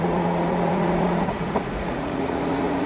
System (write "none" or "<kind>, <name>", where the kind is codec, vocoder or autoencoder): vocoder, Vocos